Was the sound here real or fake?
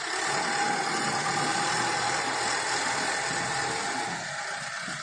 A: real